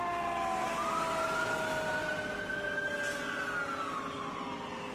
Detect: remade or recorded recorded